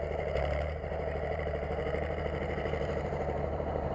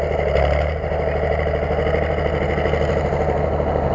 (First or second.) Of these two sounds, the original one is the second